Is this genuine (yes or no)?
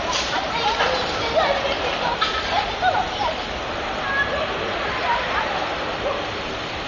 yes